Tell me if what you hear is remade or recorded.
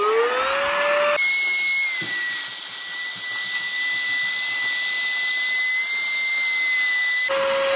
recorded